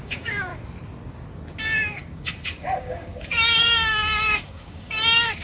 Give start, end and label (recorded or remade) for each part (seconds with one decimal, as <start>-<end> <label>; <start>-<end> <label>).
0.0-0.5 remade; 0.5-1.6 recorded; 1.6-5.4 remade